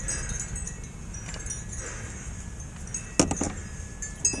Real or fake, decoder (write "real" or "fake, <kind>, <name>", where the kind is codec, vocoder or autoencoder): real